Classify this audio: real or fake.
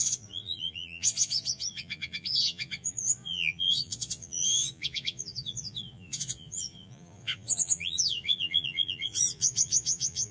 fake